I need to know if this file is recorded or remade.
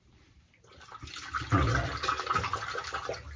recorded